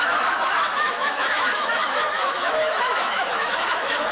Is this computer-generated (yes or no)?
yes